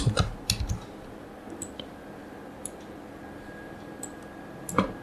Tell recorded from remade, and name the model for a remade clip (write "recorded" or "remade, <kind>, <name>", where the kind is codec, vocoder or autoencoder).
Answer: recorded